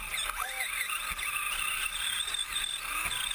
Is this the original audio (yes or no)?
yes